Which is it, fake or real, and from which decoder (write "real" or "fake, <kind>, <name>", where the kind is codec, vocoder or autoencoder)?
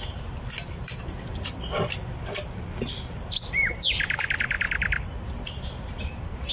fake, vocoder, BigVGAN v2